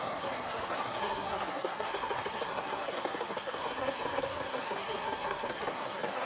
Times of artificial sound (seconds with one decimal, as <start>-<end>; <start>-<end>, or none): 0.0-6.3